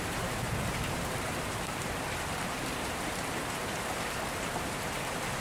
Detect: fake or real fake